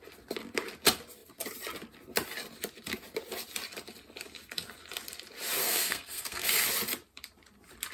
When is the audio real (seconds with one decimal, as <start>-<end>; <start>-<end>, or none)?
0.0-5.6; 6.6-7.9